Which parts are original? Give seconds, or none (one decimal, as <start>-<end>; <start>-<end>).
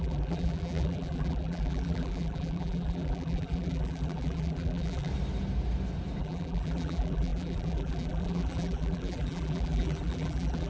5.1-6.2